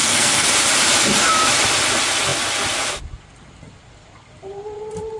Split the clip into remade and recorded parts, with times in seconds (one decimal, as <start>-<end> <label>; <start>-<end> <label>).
0.0-0.5 remade; 0.5-5.2 recorded